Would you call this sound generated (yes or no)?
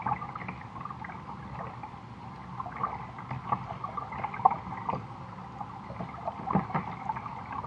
no